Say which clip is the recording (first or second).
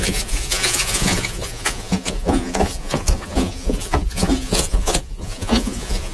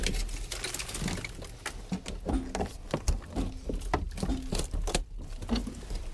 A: second